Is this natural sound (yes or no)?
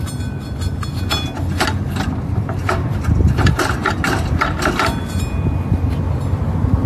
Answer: yes